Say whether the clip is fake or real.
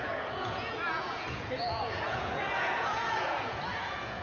fake